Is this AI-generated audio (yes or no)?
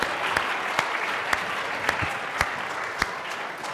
no